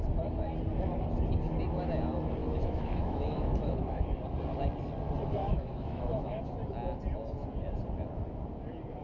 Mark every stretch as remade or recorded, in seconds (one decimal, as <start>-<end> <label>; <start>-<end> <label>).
0.0-2.4 recorded; 2.4-4.2 remade; 4.2-5.4 recorded; 5.4-6.4 remade; 6.4-9.0 recorded